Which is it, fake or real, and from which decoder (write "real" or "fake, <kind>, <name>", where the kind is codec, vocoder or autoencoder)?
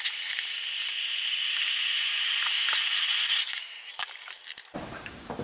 fake, vocoder, BigVGAN v2